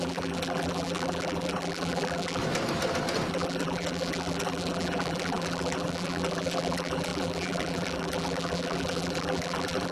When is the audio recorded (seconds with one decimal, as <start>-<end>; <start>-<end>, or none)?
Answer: 2.4-3.3